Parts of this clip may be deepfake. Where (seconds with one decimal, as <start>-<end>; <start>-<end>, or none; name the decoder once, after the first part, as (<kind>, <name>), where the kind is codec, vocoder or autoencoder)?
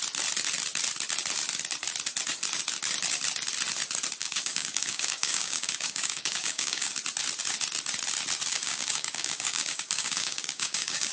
4.2-6.9 (codec, DAC); 8.5-11.1